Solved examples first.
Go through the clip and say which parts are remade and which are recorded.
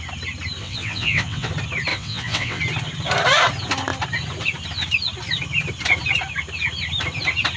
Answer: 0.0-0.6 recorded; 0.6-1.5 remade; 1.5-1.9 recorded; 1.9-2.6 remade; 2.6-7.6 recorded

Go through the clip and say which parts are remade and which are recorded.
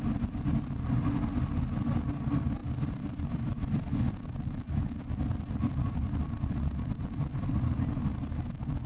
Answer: 0.0-8.9 recorded